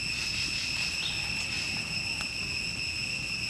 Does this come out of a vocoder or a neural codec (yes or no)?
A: no